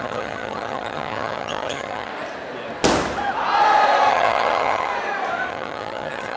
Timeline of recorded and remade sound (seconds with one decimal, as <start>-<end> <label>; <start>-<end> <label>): 0.0-2.1 remade; 2.1-4.1 recorded; 4.1-4.9 remade; 4.9-5.5 recorded; 5.5-6.4 remade